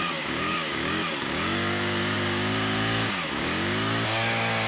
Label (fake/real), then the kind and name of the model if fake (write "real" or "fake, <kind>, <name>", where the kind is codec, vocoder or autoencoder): fake, codec, DAC